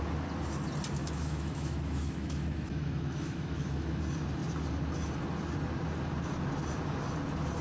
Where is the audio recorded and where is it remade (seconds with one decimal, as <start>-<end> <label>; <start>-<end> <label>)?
0.0-1.0 recorded; 1.0-4.0 remade; 4.0-7.6 recorded